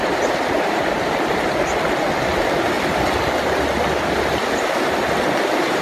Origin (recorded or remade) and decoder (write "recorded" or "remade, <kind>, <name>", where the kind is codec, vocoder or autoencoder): recorded